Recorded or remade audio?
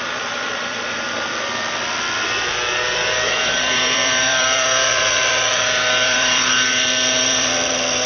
remade